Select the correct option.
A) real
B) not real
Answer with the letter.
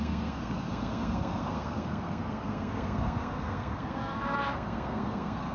B